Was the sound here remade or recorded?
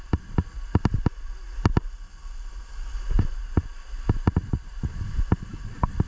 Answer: recorded